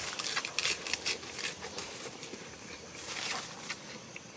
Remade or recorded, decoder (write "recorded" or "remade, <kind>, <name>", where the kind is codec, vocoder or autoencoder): recorded